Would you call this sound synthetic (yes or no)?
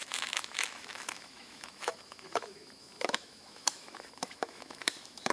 yes